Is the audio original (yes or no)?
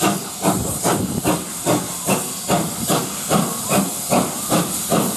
yes